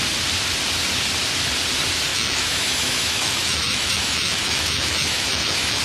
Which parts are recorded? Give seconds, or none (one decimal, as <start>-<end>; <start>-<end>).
0.0-2.1